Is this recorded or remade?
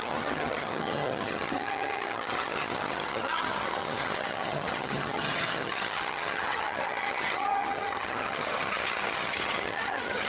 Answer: remade